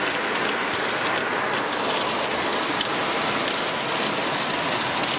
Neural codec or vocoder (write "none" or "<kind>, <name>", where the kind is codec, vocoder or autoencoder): none